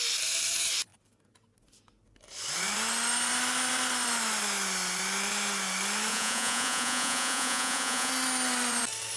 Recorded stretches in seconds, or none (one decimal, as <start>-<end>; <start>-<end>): 0.0-6.1; 8.1-9.2